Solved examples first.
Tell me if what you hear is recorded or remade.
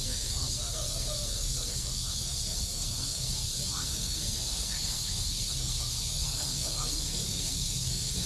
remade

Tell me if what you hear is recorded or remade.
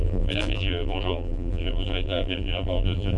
remade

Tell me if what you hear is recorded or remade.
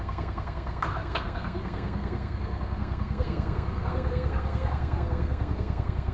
remade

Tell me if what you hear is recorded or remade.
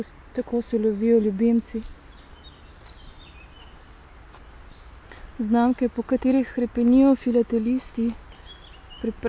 recorded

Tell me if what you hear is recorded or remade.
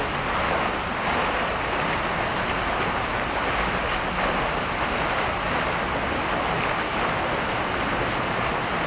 recorded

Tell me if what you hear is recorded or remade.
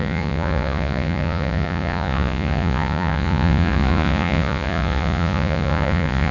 remade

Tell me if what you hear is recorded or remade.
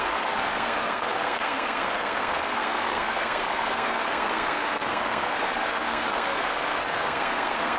remade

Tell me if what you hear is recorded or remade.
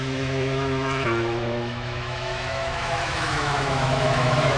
remade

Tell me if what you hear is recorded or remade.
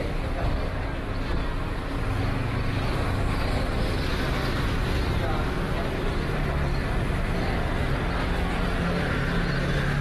recorded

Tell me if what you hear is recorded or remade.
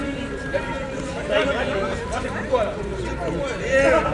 recorded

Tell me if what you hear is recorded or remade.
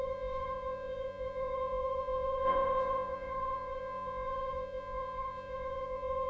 remade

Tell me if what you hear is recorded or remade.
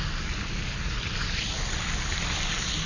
recorded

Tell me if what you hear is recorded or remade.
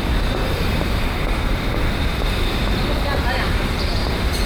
remade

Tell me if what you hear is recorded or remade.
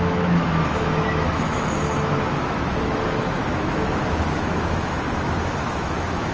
remade